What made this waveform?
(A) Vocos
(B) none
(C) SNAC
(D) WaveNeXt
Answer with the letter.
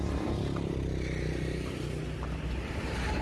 B